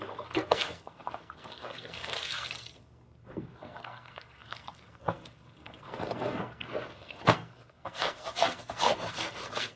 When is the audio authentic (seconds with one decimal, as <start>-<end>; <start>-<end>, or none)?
none

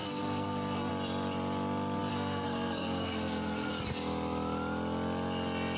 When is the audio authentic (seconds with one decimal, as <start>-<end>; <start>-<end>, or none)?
0.9-2.1; 3.7-5.8

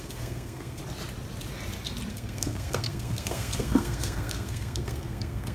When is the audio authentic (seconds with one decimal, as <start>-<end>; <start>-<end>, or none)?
0.8-2.1

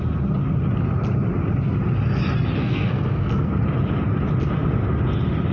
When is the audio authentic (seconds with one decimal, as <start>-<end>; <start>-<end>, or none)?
0.0-2.6; 3.5-5.5

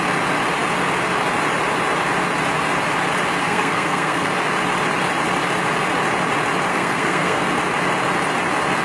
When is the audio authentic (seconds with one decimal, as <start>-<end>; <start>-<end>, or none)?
0.0-3.4; 4.3-6.7; 7.4-8.8

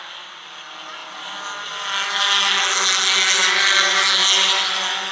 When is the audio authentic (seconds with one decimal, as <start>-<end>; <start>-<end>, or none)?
0.0-5.1